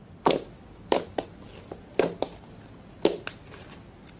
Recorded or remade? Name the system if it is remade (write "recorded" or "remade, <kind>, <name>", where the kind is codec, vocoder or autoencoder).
recorded